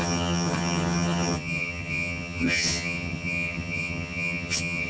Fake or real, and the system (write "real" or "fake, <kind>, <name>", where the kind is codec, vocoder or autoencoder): fake, vocoder, HiFi-GAN